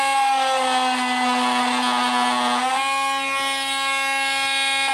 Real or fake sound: real